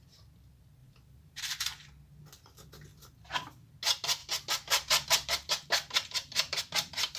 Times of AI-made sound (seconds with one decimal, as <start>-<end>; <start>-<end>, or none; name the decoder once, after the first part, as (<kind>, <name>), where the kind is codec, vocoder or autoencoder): 0.8-1.4 (vocoder, BigVGAN v2); 4.2-6.6